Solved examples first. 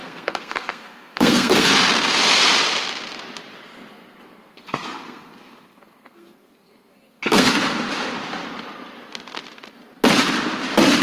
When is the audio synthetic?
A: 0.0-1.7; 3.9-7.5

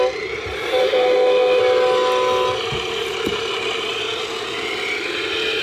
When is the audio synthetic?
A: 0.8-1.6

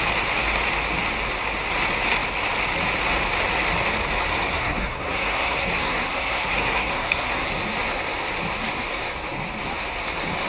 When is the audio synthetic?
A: 4.3-7.6

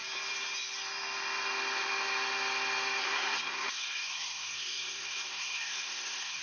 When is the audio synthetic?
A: 3.0-6.4